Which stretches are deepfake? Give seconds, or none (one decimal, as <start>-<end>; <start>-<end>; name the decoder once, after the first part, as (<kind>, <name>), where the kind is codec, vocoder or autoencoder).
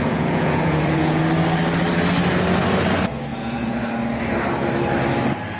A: 0.0-1.2 (vocoder, Vocos); 3.3-3.9